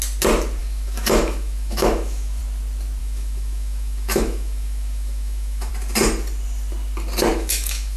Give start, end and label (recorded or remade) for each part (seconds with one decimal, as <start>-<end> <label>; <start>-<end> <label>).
0.0-0.6 recorded; 0.6-2.4 remade; 2.4-3.0 recorded; 3.0-5.7 remade; 5.7-7.3 recorded; 7.3-8.0 remade